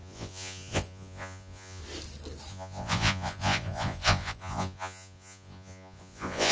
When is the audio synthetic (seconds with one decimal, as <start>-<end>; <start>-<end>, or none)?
0.0-1.8; 2.5-6.5

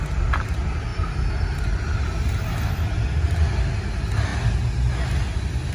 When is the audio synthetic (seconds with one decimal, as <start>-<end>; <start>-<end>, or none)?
none

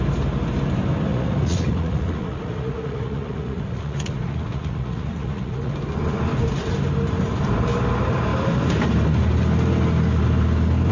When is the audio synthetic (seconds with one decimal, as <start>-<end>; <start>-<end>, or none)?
1.1-5.7

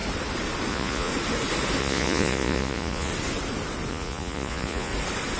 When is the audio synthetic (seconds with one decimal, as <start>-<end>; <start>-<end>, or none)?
0.7-1.1; 1.8-3.1; 3.9-4.9

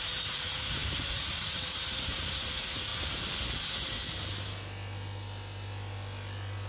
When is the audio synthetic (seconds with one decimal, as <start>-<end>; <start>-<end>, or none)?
0.0-2.9

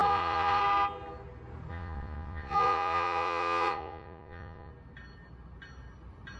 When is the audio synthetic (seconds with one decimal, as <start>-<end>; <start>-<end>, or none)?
0.0-0.6; 1.7-4.7

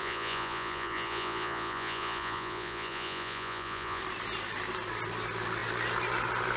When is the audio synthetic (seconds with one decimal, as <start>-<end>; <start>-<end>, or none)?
0.0-4.0